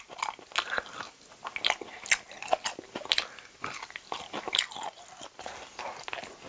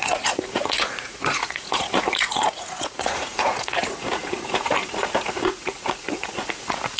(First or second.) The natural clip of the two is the first